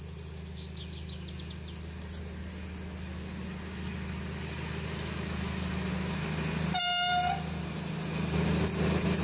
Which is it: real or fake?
real